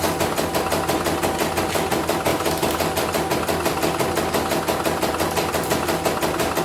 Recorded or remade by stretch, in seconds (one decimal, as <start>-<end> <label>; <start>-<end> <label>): 0.0-6.6 recorded